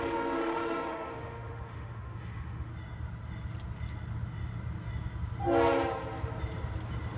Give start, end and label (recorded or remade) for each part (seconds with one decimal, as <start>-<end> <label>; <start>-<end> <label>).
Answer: 0.0-2.7 remade; 2.7-7.2 recorded